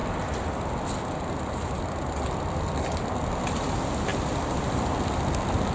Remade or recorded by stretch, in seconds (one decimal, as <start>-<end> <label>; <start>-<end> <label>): 0.0-5.7 recorded